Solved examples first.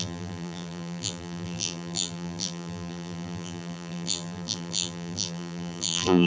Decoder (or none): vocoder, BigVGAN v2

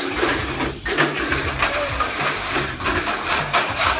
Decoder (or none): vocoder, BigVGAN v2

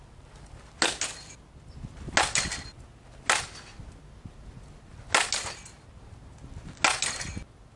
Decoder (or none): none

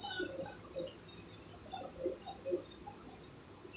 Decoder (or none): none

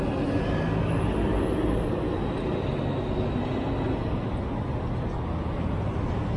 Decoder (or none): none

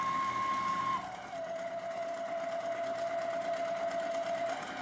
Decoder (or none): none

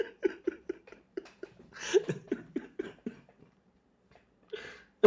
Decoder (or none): vocoder, BigVGAN v2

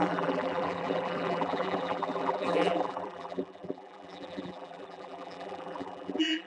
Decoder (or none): vocoder, BigVGAN v2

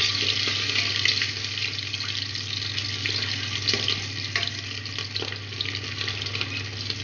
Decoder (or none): none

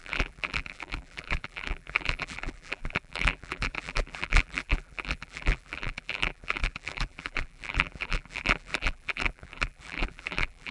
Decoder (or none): vocoder, BigVGAN v2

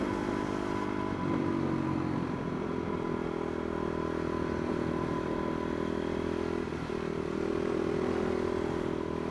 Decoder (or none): none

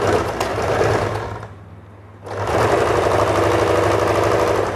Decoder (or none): none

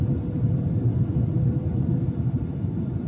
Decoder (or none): vocoder, BigVGAN v2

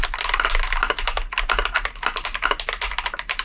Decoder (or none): none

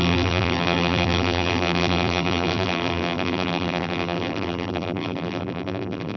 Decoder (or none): vocoder, BigVGAN v2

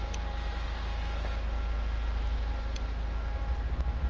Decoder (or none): none